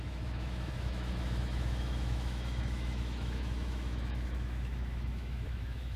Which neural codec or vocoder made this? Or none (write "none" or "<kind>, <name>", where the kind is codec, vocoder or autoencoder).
autoencoder, DAC-VAE